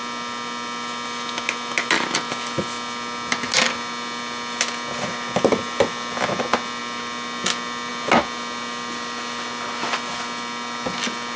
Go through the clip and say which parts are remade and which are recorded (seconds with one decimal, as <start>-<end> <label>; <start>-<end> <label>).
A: 0.0-11.4 recorded